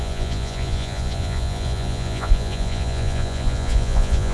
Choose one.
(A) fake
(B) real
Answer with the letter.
A